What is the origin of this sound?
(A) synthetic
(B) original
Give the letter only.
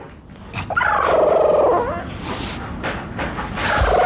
B